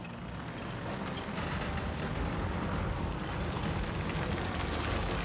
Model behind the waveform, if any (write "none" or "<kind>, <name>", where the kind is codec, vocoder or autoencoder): none